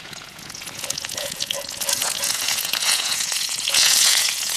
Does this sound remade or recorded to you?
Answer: remade